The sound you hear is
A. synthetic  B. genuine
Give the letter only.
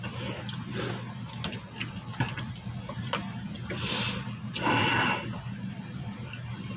B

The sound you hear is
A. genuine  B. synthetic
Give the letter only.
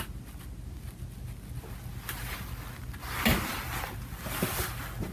A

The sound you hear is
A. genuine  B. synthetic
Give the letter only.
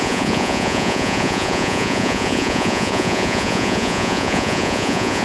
B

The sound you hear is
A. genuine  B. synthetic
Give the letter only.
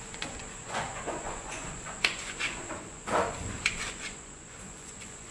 B